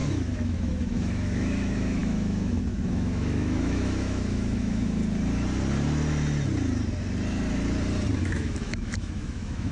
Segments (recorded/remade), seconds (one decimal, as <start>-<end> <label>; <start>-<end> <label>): 0.0-5.0 remade; 5.0-8.2 recorded; 8.2-9.7 remade